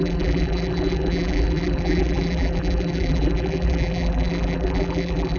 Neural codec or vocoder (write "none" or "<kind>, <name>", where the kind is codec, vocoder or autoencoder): vocoder, BigVGAN v2